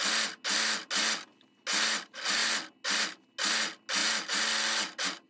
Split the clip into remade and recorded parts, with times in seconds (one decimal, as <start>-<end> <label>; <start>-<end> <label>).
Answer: 0.0-5.3 recorded